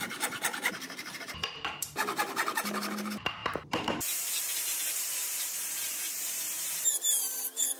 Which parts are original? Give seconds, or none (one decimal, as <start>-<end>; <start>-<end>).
none